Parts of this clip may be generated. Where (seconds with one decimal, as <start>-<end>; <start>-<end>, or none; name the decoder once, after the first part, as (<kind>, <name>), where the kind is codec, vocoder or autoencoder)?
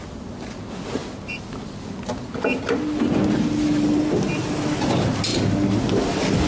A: none